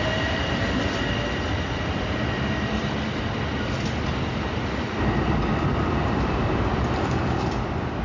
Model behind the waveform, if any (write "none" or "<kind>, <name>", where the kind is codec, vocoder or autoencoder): none